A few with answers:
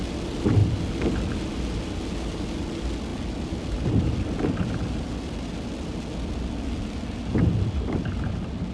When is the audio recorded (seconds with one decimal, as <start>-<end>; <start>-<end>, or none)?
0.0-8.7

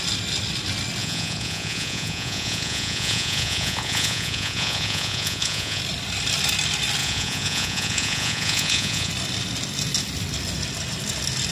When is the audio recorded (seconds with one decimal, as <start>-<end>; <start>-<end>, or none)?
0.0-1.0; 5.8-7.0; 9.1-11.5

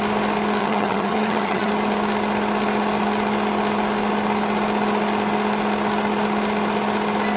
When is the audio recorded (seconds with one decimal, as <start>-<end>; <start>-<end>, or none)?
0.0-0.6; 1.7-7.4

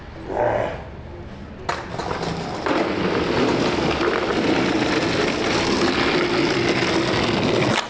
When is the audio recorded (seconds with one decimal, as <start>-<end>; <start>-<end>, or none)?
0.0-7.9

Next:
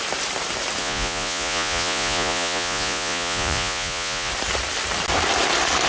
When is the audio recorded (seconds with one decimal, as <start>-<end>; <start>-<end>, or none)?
0.0-0.8; 4.3-5.9